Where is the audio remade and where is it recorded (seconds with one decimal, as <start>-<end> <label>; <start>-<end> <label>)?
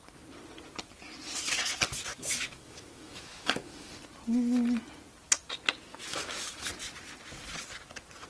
0.0-2.1 recorded; 2.1-3.9 remade; 3.9-5.9 recorded; 5.9-6.7 remade; 6.7-8.3 recorded